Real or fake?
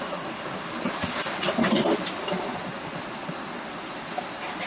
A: real